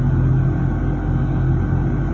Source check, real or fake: real